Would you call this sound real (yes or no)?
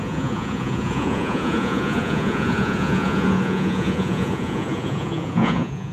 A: no